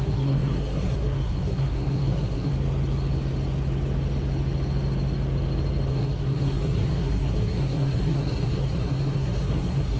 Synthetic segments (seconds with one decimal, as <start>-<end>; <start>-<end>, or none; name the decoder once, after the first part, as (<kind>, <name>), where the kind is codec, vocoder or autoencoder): 0.0-2.5 (codec, SNAC); 5.9-10.0